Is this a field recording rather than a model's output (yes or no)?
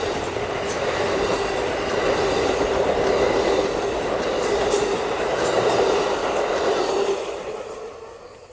yes